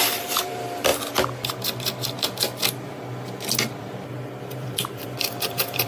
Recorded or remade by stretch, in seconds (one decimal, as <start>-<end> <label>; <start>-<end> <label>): 0.0-0.9 remade; 0.9-4.4 recorded; 4.4-5.9 remade